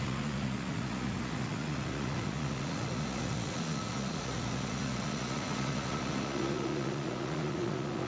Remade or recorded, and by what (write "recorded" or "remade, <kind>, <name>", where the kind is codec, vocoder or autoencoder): remade, vocoder, Vocos